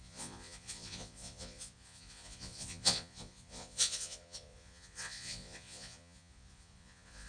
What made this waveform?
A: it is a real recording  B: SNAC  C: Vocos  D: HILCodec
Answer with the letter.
C